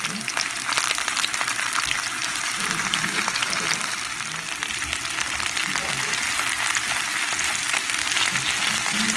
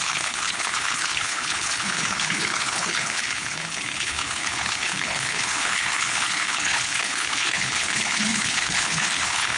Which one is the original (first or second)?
first